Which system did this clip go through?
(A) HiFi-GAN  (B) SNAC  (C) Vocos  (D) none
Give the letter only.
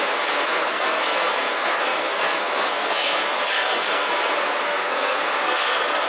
B